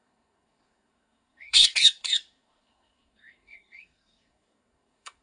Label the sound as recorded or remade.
remade